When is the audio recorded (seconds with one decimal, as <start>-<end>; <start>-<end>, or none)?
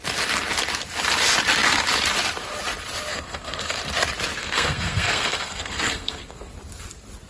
0.0-3.1; 3.8-4.4; 6.5-7.3